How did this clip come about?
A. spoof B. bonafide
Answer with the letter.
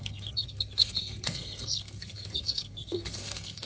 A